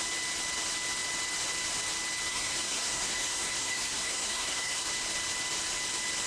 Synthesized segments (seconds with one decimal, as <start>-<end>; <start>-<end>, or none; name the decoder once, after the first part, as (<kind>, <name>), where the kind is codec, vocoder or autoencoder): 2.3-4.9 (codec, SNAC)